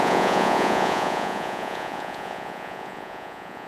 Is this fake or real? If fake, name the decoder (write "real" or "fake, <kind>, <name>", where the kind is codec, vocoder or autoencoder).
fake, vocoder, Vocos